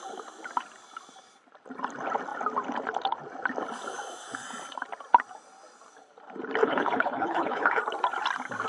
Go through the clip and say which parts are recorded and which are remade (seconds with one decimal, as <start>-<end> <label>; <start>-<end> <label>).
0.0-6.6 recorded; 6.6-7.8 remade; 7.8-8.7 recorded